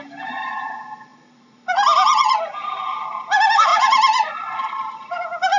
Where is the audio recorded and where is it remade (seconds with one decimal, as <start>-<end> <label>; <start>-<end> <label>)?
0.0-3.7 recorded; 3.7-4.3 remade; 4.3-5.6 recorded